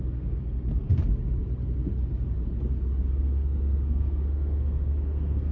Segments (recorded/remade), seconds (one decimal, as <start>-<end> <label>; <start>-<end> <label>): 0.0-1.0 remade; 1.0-3.1 recorded; 3.1-5.5 remade